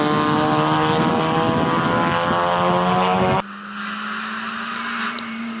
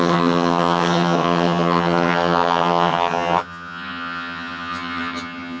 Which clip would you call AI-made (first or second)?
second